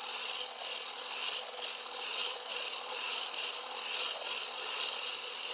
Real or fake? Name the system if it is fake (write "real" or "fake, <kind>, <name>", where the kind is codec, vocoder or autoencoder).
fake, vocoder, Vocos